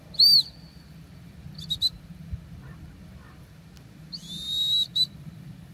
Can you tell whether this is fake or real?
real